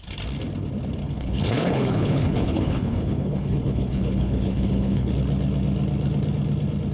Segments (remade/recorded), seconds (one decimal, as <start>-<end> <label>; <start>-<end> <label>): 0.0-1.0 recorded; 1.0-5.1 remade; 5.1-6.9 recorded